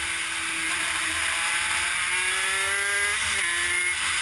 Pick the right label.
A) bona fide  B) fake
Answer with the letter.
A